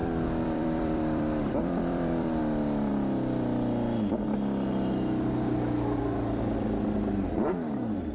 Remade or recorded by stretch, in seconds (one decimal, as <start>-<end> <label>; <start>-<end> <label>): 0.0-2.4 remade; 2.4-8.1 recorded